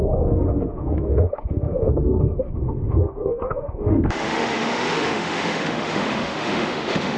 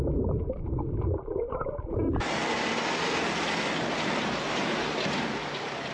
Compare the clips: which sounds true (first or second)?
second